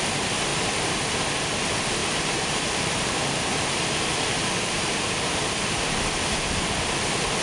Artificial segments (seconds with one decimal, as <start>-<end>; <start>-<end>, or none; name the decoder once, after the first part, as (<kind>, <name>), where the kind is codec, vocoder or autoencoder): 0.5-1.0 (vocoder, BigVGAN v2); 2.0-6.4